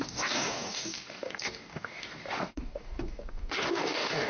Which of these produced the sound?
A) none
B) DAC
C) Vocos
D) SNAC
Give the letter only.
B